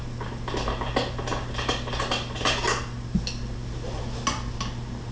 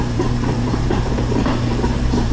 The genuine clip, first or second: first